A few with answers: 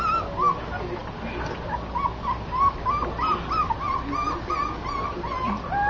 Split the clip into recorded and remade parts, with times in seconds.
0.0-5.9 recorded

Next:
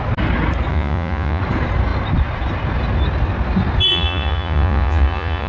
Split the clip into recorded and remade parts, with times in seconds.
0.0-0.7 recorded; 0.7-1.4 remade; 1.4-3.9 recorded; 3.9-5.5 remade

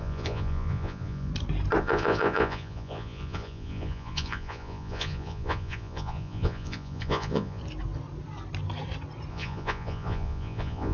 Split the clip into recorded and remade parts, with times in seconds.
0.0-1.3 remade; 1.3-1.8 recorded; 1.8-7.6 remade; 7.6-9.3 recorded; 9.3-10.9 remade